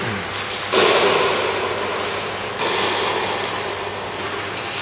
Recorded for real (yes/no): yes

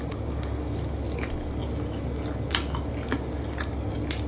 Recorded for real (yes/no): yes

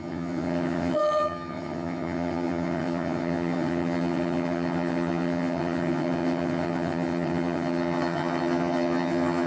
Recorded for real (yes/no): no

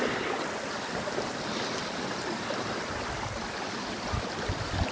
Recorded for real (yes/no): yes